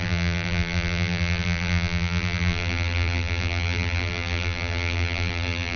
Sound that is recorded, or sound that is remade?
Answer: remade